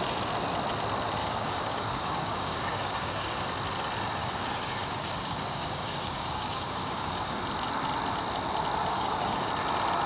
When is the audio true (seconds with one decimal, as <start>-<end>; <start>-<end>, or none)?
0.0-1.2; 3.5-4.2; 7.4-8.9; 9.5-10.1